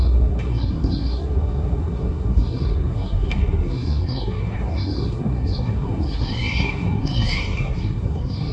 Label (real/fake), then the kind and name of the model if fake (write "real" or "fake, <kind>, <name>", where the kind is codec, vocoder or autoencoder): fake, codec, SNAC